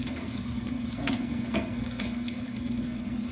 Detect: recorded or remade remade